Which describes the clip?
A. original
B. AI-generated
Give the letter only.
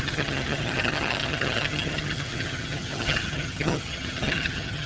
B